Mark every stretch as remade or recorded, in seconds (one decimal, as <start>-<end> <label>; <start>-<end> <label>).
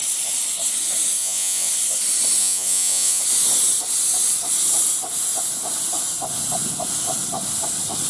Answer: 0.0-1.2 recorded; 1.2-1.7 remade; 1.7-2.4 recorded; 2.4-3.2 remade; 3.2-8.1 recorded